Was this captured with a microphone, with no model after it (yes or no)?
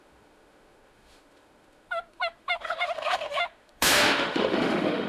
no